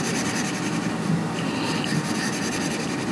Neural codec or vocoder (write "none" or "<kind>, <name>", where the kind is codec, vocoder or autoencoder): none